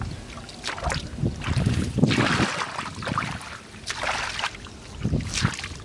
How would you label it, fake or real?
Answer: real